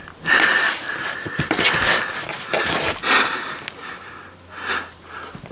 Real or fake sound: real